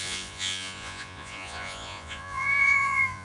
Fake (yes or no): yes